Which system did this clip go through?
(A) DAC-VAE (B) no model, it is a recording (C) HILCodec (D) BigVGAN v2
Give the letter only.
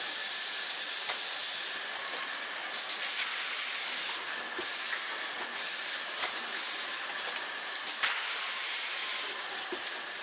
B